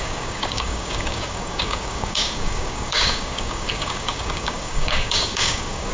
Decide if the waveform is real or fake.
fake